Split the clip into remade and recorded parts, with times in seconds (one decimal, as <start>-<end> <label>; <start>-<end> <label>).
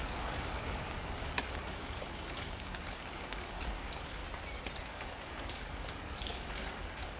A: 0.0-4.2 remade; 4.2-4.8 recorded; 4.8-7.2 remade